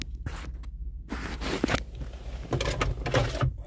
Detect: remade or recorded recorded